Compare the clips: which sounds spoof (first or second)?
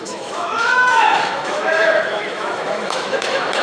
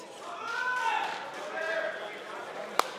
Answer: first